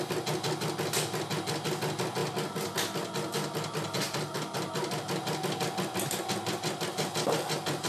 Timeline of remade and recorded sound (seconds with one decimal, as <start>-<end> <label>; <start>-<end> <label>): 0.0-7.9 recorded